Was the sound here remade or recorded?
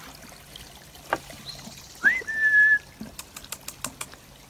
recorded